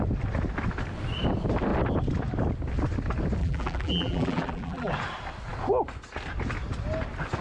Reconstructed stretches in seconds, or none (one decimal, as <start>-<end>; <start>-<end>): 3.4-4.9

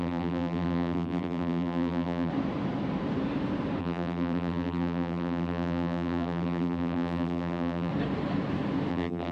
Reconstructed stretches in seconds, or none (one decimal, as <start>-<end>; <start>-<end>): 0.0-2.3; 3.8-7.9; 8.9-9.3

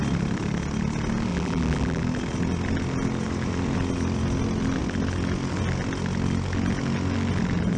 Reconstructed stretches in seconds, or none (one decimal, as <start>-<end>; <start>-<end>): 1.3-2.0